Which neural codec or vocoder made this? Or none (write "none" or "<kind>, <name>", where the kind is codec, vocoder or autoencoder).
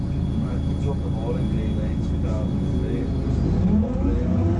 none